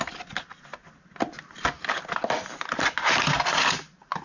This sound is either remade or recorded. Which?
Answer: recorded